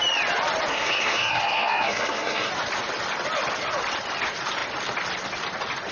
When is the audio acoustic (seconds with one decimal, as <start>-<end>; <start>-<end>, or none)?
0.0-0.7; 2.5-5.9